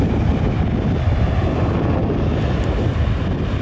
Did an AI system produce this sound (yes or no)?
no